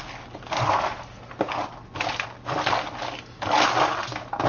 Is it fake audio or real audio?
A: real